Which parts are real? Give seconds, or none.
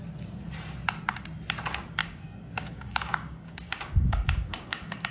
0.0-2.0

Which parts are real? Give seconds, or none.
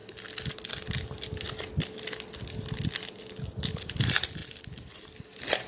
0.0-5.7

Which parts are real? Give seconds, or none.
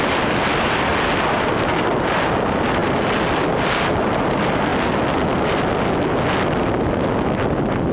0.0-7.9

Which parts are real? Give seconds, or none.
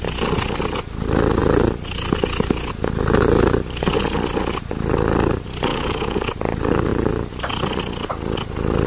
0.0-5.7; 6.3-8.9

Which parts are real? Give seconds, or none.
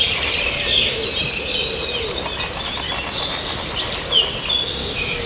0.0-4.8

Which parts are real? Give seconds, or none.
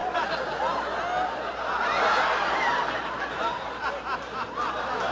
0.0-5.1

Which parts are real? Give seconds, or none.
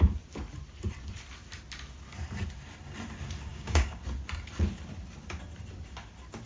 0.0-3.5; 4.0-6.5